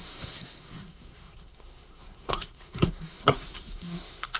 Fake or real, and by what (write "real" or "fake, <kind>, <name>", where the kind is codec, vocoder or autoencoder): fake, codec, SNAC